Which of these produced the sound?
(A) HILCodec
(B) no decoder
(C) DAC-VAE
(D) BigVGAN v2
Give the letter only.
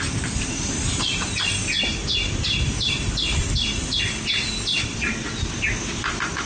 B